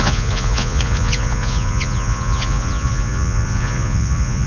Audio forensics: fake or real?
fake